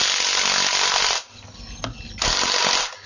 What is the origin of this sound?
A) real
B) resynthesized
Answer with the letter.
A